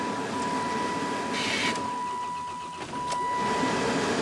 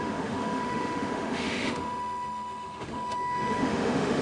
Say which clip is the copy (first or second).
second